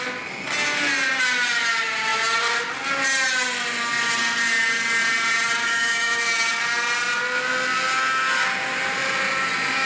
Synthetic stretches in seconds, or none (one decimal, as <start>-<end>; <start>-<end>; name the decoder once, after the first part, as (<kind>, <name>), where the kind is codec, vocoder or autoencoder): 5.6-6.3 (autoencoder, DAC-VAE)